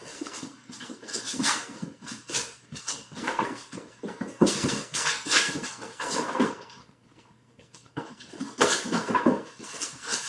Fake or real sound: fake